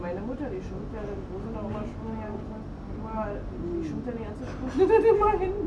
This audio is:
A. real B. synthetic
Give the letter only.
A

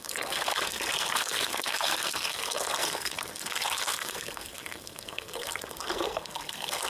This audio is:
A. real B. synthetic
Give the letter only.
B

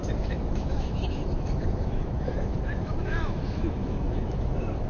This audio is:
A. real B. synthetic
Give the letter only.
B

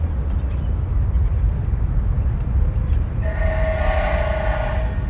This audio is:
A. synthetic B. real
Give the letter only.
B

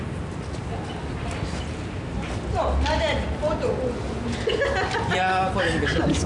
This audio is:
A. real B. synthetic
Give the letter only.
A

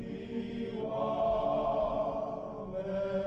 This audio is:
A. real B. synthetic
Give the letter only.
A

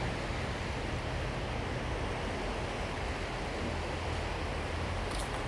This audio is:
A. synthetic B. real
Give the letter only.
B